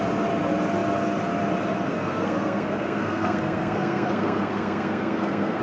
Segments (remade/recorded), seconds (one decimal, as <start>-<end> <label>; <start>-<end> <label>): 0.0-1.9 recorded; 1.9-5.6 remade